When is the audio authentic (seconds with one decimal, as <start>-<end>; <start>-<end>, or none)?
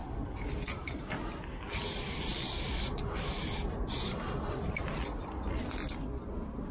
0.0-6.7